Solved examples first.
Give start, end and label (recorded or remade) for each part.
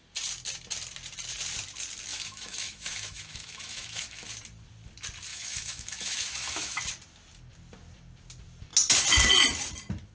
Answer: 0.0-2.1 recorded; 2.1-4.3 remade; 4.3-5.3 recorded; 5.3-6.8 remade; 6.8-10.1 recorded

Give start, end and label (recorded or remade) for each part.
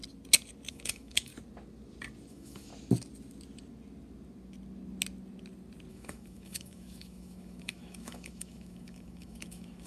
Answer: 0.0-0.7 recorded; 0.7-1.3 remade; 1.3-2.3 recorded; 2.3-2.7 remade; 2.7-5.9 recorded; 5.9-9.9 remade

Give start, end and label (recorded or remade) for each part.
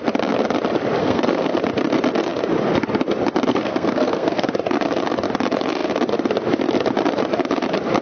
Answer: 0.0-1.0 recorded; 1.0-1.6 remade; 1.6-3.5 recorded; 3.5-4.5 remade; 4.5-8.0 recorded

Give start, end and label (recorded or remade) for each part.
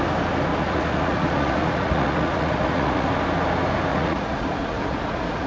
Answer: 0.0-0.5 recorded; 0.5-3.1 remade; 3.1-3.9 recorded; 3.9-5.5 remade